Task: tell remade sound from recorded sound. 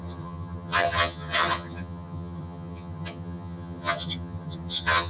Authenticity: remade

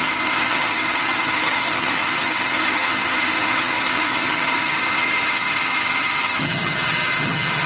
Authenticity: remade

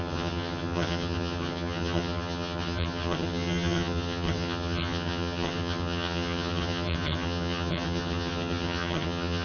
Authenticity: remade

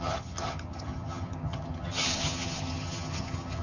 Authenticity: remade